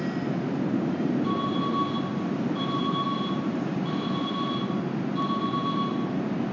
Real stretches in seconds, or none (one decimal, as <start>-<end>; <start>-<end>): 0.0-6.5

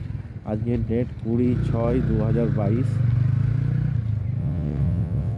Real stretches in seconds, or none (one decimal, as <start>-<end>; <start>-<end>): 0.0-4.4

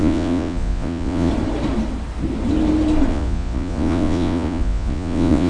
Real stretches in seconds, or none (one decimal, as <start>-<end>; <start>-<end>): 1.3-3.1

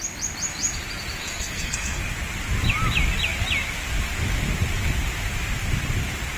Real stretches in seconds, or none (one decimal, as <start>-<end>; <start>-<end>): 0.0-1.2; 2.0-6.4

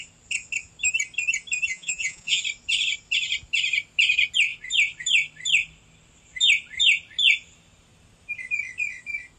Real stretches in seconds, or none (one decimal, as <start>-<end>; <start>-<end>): 0.0-1.7; 2.4-9.4

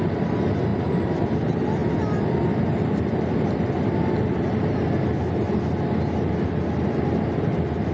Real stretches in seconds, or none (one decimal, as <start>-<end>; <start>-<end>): 0.0-0.7; 1.3-7.9

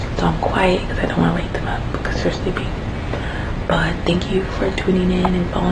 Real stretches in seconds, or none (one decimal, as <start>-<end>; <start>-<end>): 0.0-2.2; 2.9-5.7

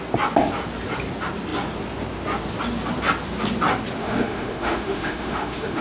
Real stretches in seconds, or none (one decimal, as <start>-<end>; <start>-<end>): 0.0-4.0